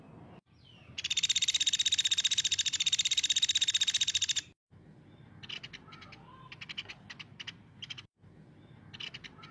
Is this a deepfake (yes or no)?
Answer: no